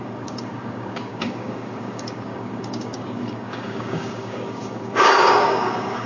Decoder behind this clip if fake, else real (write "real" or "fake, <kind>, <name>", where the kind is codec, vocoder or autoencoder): fake, codec, DAC